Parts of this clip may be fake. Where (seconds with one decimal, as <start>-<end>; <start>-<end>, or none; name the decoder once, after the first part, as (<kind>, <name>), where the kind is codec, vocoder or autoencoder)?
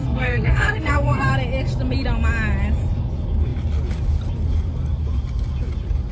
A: 0.0-1.3 (codec, SNAC)